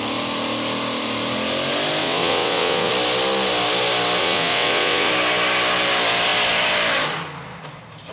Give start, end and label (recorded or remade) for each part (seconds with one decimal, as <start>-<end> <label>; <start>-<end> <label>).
0.0-2.0 recorded; 2.0-2.9 remade; 2.9-4.2 recorded; 4.2-5.1 remade; 5.1-8.1 recorded